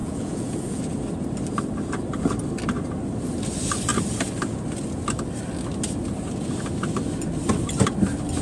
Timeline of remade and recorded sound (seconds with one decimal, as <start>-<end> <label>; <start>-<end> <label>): 0.0-0.8 remade; 0.8-8.4 recorded